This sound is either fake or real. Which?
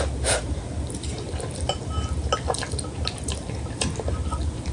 real